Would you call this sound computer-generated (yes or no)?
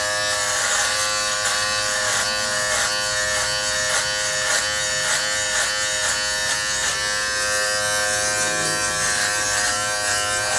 no